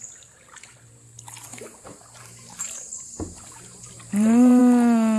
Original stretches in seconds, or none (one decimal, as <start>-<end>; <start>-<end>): 0.0-1.5; 4.6-5.2